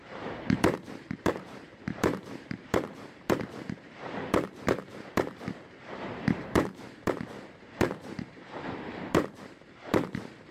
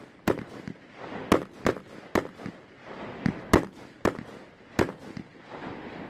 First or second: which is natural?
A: second